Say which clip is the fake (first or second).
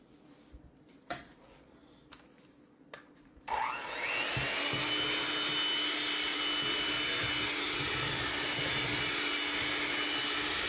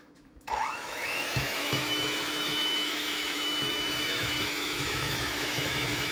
second